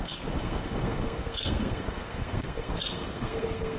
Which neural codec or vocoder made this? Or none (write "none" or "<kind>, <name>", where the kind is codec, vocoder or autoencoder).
codec, SNAC